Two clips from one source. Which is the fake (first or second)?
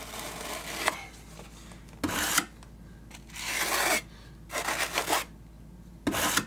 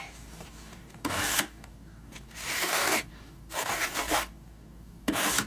second